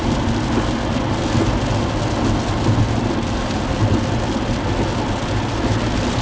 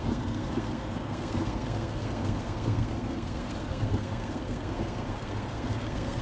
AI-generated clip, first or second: second